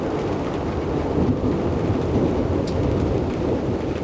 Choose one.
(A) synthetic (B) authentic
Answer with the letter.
B